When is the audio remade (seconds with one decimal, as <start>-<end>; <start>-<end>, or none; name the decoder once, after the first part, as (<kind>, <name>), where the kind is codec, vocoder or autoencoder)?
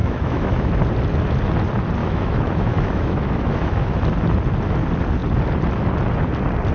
0.0-0.7 (autoencoder, DAC-VAE); 2.0-4.0